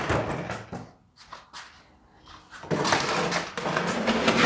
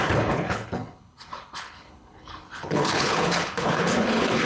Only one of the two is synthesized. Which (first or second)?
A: second